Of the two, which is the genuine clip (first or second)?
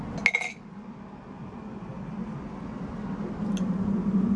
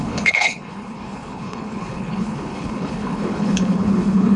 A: first